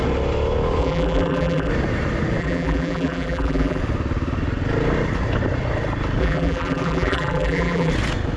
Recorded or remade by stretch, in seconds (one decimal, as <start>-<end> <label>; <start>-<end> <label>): 0.0-0.8 recorded; 0.8-1.7 remade; 1.7-2.4 recorded; 2.4-3.8 remade; 3.8-6.2 recorded; 6.2-7.9 remade; 7.9-8.4 recorded